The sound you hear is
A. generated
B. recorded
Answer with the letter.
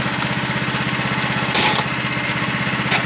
B